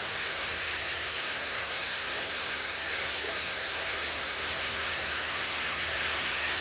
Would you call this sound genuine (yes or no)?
no